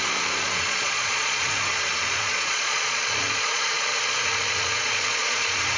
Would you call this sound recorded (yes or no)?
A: no